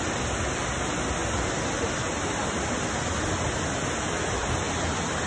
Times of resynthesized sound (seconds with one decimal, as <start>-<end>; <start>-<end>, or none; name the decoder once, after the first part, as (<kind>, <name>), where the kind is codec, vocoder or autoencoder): none